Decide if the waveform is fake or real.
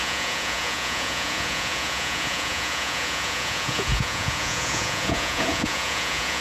fake